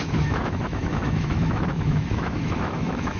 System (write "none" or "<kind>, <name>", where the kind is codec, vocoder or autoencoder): autoencoder, DAC-VAE